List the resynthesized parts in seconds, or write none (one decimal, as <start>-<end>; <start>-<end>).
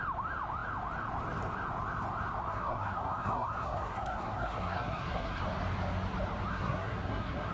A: 2.5-5.4; 6.5-7.5